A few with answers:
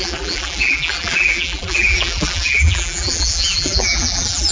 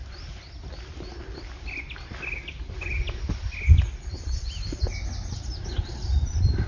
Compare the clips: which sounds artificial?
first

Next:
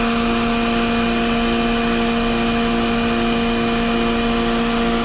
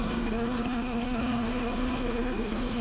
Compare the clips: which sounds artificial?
second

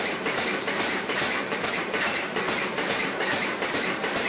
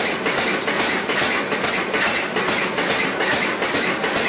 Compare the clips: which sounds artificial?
first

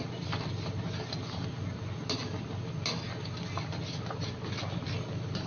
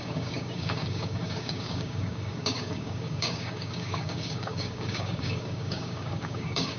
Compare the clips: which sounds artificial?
second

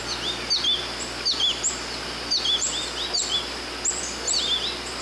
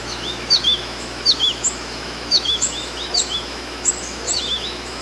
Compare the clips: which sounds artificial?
second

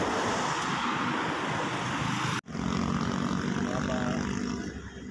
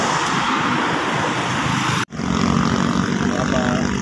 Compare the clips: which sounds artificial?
second